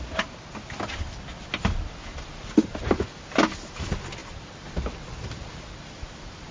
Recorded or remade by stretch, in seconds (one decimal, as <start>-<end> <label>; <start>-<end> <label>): 0.0-2.1 recorded; 2.1-3.0 remade; 3.0-6.5 recorded